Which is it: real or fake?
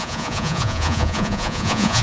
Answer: fake